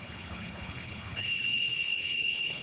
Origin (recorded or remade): remade